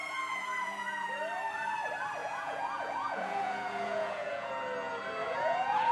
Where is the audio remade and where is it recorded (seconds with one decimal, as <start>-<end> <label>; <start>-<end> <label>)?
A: 0.0-1.1 remade; 1.1-2.2 recorded; 2.2-4.5 remade; 4.5-5.2 recorded; 5.2-5.9 remade